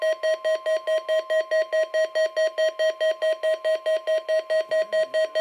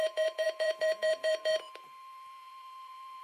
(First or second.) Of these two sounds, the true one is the first